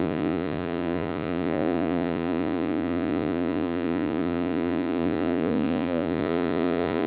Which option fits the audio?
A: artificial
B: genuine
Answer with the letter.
A